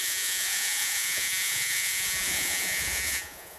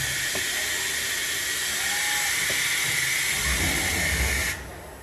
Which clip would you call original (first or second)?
second